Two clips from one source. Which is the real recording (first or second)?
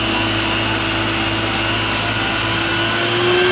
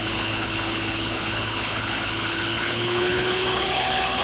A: first